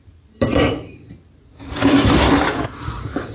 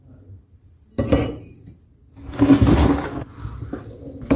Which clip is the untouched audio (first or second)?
second